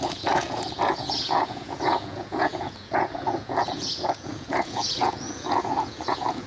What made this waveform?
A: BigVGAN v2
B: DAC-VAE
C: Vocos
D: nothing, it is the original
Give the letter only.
C